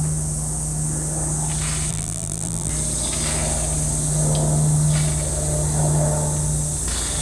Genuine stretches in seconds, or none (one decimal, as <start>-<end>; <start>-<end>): 0.0-1.9; 2.7-7.2